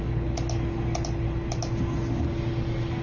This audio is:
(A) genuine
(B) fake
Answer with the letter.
A